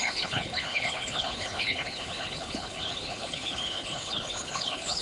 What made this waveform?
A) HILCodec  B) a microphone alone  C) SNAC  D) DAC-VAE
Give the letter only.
A